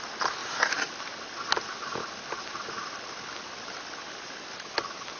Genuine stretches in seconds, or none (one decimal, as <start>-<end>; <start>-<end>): 0.0-5.2